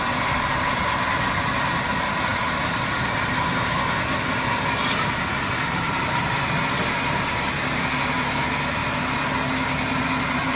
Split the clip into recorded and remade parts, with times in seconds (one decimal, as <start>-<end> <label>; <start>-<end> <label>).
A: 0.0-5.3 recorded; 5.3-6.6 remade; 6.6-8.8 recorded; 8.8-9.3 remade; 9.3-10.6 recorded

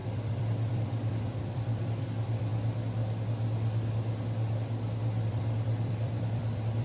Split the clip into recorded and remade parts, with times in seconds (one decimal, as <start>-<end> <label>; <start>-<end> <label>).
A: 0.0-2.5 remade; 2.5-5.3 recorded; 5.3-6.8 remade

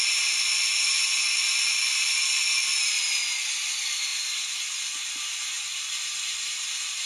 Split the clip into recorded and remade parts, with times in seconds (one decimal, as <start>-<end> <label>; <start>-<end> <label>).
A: 0.0-7.1 recorded